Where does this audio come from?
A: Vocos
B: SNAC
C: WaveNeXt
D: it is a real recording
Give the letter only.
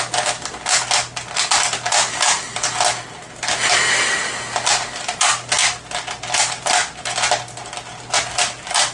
D